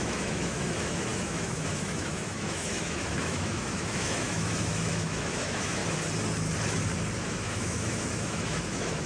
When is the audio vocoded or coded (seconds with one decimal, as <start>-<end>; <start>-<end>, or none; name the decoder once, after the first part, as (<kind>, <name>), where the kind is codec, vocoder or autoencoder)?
0.0-5.8 (autoencoder, DAC-VAE); 7.2-9.1